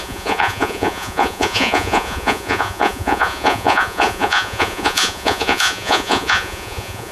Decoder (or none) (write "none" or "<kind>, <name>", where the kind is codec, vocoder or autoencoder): vocoder, Vocos